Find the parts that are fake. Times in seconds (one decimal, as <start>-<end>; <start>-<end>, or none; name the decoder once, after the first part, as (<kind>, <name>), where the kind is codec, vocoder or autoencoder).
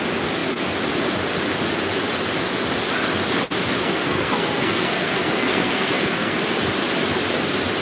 3.8-6.4 (codec, SNAC)